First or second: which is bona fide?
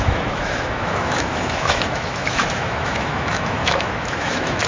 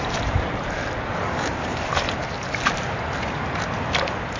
second